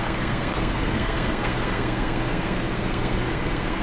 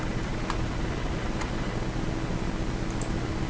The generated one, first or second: first